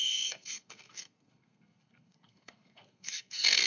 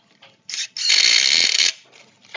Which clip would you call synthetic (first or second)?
first